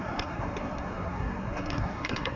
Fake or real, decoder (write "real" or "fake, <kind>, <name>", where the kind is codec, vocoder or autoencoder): fake, codec, SNAC